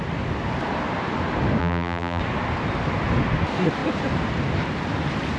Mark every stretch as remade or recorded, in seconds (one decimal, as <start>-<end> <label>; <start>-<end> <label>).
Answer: 0.0-1.6 recorded; 1.6-2.2 remade; 2.2-5.4 recorded